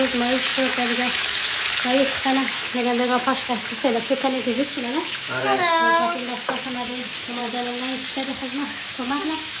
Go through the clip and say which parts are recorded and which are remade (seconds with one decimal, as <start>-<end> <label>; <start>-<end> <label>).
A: 0.0-7.4 remade; 7.4-8.3 recorded; 8.3-9.6 remade